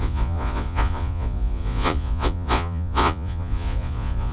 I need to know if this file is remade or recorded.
remade